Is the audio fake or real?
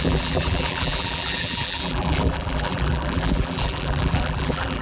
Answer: fake